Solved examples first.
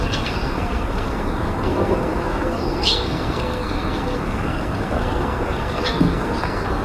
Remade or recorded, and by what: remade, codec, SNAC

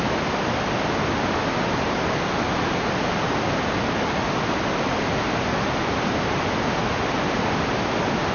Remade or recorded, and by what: recorded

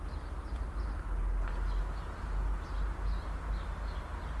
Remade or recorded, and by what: recorded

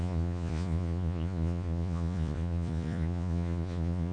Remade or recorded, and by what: remade, vocoder, Vocos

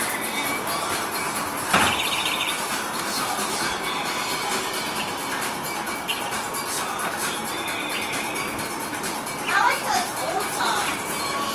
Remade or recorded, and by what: remade, vocoder, BigVGAN v2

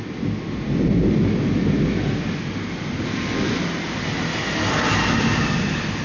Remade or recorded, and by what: recorded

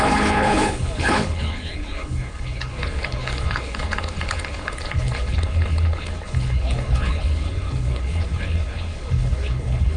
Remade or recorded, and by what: remade, codec, HILCodec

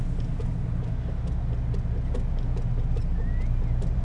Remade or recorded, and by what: recorded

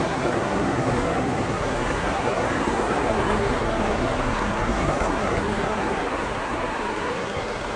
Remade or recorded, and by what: remade, codec, SNAC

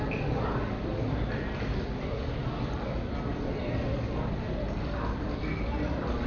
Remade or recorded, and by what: recorded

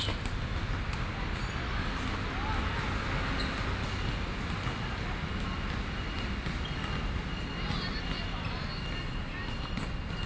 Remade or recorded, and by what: recorded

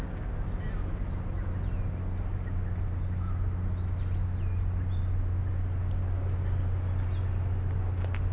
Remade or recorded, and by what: recorded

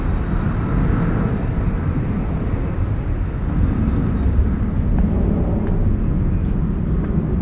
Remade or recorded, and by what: recorded